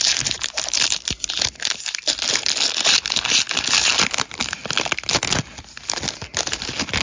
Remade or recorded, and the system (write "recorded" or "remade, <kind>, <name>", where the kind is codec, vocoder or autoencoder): recorded